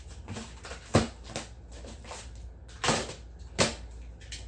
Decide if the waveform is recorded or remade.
recorded